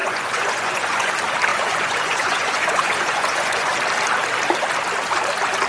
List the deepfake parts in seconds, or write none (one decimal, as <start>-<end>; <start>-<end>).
0.0-1.1; 1.5-3.7